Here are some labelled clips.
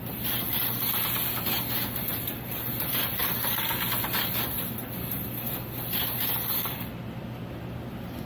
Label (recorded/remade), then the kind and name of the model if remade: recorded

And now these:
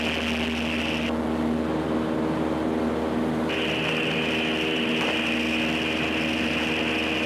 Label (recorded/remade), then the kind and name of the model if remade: recorded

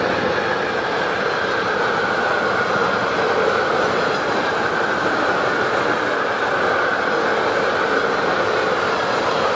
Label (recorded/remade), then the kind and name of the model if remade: recorded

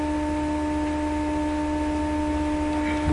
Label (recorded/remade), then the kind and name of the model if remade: recorded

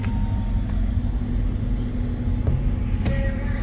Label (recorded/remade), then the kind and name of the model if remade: recorded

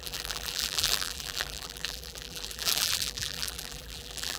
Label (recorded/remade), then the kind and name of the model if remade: remade, vocoder, BigVGAN v2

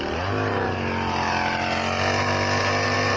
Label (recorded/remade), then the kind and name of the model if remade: recorded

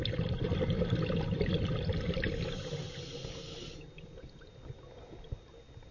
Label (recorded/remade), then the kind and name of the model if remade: recorded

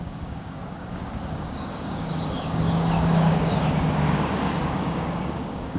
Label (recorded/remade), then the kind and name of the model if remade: remade, codec, DAC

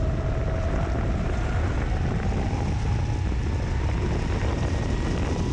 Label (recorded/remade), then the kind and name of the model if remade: recorded